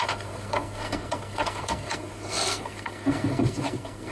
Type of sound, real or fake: fake